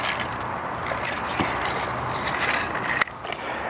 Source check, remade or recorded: recorded